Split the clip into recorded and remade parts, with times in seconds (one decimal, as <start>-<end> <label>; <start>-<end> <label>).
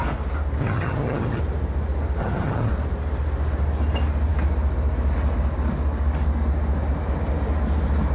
0.0-0.6 recorded; 0.6-1.4 remade; 1.4-2.2 recorded; 2.2-2.7 remade; 2.7-8.1 recorded